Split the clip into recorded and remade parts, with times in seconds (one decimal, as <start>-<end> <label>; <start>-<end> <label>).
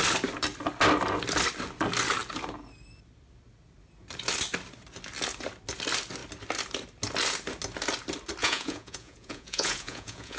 0.0-8.4 recorded; 8.4-10.4 remade